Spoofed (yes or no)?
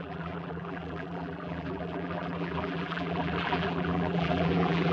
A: yes